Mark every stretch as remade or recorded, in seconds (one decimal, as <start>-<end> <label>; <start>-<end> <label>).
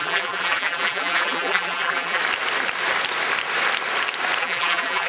0.0-2.2 remade; 2.2-4.4 recorded; 4.4-5.1 remade